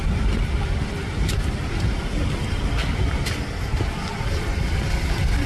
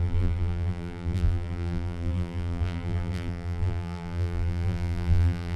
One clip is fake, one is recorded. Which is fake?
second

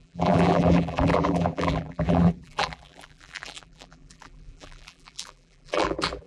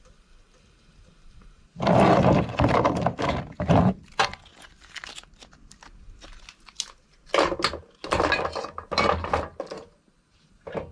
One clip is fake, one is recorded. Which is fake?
first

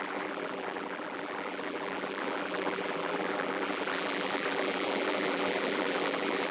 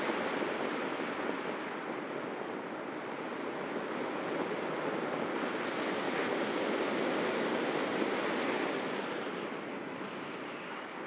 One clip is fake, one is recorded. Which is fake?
first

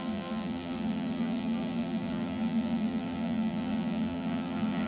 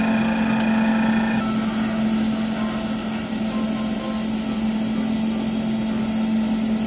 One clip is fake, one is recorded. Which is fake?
first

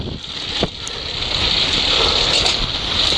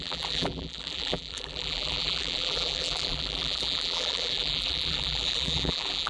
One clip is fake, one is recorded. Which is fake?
second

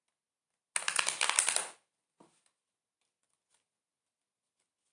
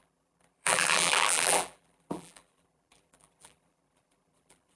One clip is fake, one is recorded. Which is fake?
second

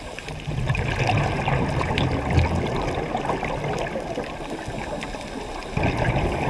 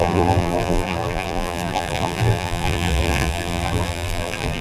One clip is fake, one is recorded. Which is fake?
second